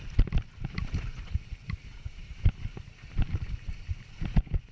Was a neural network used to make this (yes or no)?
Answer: no